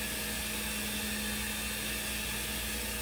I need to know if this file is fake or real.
real